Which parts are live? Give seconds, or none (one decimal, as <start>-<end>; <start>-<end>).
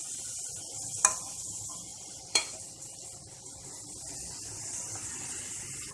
0.6-1.9; 2.6-5.9